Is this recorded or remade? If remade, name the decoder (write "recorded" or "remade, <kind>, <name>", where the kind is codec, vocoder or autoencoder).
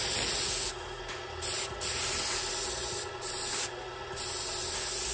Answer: recorded